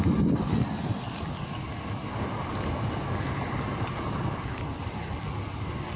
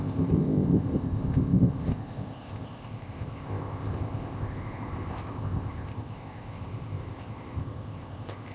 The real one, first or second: first